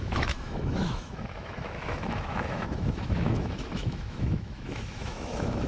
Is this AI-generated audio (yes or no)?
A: yes